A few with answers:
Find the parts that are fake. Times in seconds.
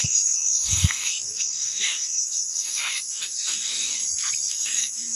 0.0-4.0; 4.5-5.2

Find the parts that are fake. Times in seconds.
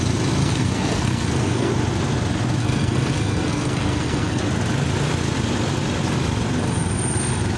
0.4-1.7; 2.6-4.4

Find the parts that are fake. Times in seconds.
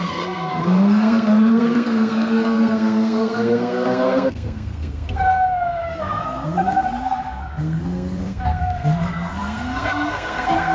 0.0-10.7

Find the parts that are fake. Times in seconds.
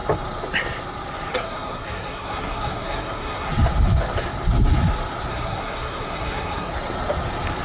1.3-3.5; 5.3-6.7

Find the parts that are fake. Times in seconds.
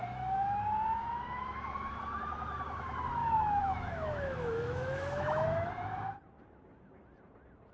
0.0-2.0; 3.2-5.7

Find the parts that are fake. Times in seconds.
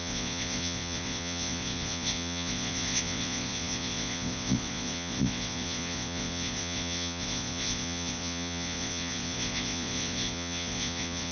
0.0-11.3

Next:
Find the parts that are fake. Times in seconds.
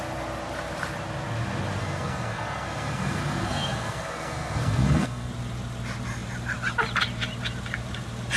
1.8-5.3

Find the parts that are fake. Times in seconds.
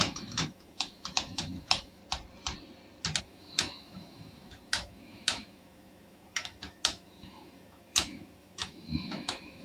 0.0-2.0; 3.2-9.6